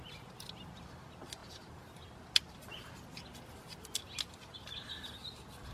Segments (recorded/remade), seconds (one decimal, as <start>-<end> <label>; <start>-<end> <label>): 0.0-5.7 recorded